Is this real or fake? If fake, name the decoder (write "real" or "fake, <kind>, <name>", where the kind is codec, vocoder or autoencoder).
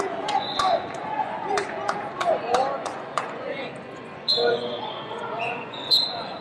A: fake, vocoder, Vocos